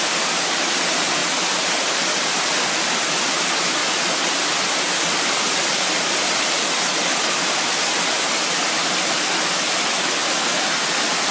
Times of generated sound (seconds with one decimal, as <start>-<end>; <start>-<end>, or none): none